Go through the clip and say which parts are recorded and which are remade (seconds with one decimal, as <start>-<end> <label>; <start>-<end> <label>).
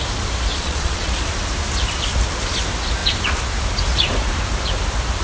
0.0-0.5 recorded; 0.5-1.1 remade; 1.1-5.2 recorded